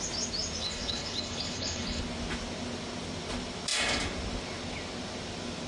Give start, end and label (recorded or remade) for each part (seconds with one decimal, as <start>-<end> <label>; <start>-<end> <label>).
0.0-0.6 recorded; 0.6-2.0 remade; 2.0-5.7 recorded